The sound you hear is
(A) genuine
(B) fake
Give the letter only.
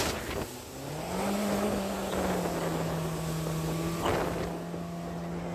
A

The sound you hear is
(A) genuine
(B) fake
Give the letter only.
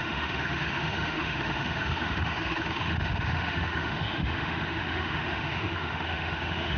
B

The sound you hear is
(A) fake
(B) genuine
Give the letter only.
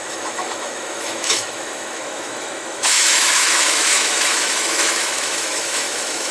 A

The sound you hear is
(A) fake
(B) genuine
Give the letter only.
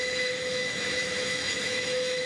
A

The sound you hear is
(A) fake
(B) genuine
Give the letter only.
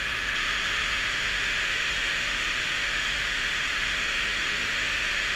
A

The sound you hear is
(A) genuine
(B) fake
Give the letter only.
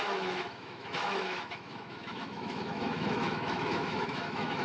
B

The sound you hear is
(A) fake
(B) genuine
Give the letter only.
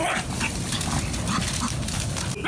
B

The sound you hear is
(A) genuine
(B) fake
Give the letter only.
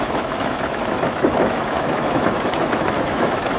B